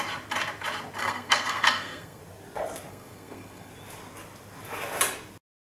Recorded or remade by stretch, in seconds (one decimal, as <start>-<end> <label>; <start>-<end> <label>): 0.0-1.0 recorded; 1.0-2.2 remade; 2.2-2.9 recorded; 2.9-3.7 remade; 3.7-5.7 recorded